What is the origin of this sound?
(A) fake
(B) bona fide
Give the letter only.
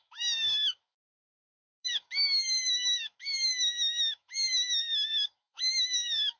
A